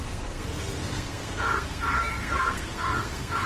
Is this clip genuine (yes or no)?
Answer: no